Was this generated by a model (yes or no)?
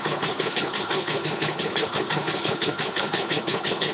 yes